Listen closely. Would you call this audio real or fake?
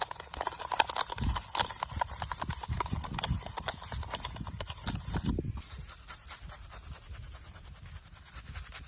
real